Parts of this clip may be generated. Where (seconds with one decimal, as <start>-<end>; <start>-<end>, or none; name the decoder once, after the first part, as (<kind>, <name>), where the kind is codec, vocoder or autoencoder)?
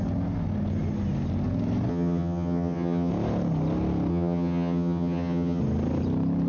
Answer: 1.9-3.1 (vocoder, HiFi-GAN); 4.1-5.6